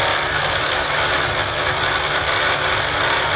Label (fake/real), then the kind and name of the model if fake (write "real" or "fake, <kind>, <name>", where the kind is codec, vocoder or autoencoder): real